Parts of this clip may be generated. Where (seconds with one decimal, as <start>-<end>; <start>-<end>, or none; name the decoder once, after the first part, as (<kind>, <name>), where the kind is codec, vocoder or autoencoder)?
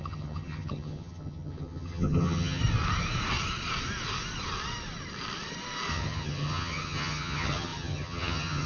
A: 0.0-2.6 (vocoder, HiFi-GAN); 5.9-8.7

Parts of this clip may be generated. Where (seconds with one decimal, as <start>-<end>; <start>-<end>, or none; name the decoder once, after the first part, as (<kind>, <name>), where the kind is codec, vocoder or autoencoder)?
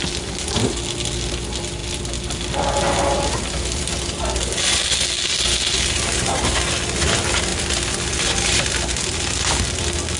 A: none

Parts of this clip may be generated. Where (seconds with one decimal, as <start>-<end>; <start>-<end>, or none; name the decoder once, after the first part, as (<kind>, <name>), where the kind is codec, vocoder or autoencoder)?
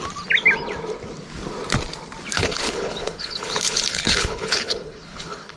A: 2.4-5.6 (codec, HILCodec)